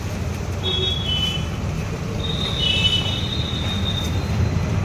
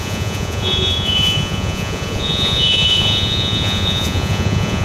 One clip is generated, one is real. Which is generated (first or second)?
second